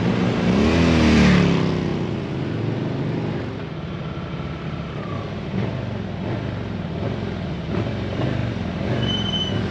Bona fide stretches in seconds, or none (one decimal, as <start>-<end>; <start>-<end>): 0.0-9.7